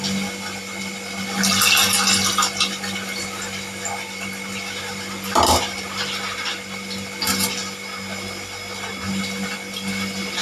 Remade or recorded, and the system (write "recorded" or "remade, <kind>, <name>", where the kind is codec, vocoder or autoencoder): recorded